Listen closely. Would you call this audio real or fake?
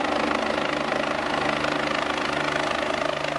real